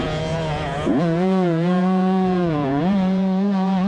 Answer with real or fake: fake